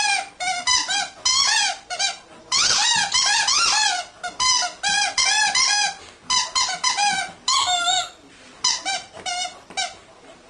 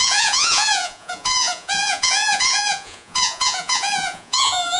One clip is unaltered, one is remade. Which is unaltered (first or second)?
first